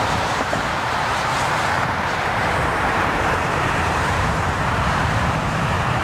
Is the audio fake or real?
fake